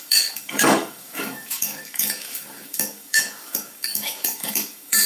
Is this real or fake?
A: fake